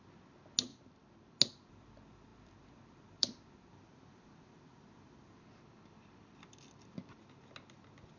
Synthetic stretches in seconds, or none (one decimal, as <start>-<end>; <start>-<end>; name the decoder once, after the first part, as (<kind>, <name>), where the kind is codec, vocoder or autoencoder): 0.7-1.4 (vocoder, BigVGAN v2); 2.3-7.2